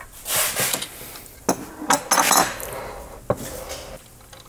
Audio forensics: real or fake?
real